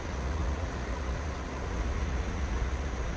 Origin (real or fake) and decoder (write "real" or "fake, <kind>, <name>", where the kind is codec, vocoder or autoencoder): fake, vocoder, Vocos